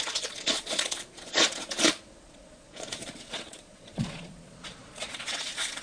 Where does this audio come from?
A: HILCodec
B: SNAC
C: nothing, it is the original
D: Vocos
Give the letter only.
D